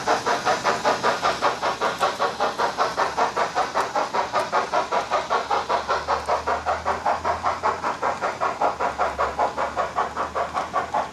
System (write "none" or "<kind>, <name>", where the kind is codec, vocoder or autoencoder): none